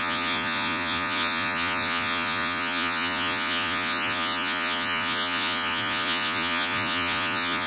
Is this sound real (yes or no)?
no